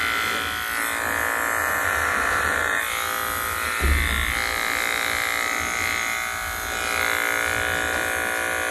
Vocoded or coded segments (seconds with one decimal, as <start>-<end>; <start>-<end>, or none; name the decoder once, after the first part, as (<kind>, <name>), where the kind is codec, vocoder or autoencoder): 1.6-2.8 (vocoder, BigVGAN v2)